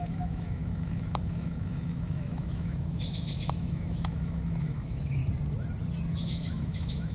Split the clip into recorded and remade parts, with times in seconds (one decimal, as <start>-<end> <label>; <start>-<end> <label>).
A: 0.0-5.2 remade; 5.2-6.1 recorded; 6.1-7.1 remade